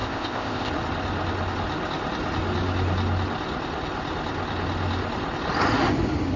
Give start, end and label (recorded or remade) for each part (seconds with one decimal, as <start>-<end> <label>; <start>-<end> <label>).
0.0-0.7 remade; 0.7-6.4 recorded